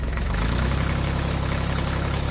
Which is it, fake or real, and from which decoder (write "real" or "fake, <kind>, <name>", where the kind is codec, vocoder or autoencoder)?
fake, autoencoder, DAC-VAE